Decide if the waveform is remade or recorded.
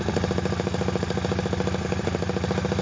recorded